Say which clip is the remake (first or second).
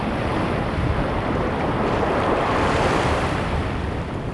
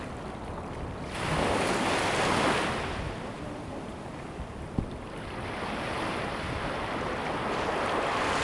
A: first